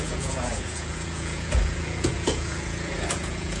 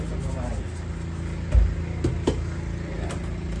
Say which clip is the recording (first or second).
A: second